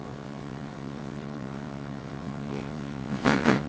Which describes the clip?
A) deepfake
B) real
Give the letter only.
A